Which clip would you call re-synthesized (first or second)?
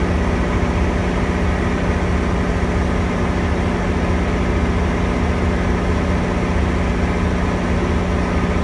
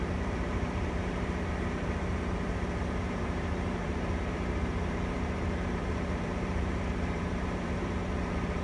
second